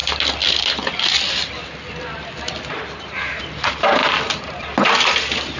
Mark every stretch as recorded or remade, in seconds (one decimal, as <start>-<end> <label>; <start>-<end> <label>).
0.0-5.6 recorded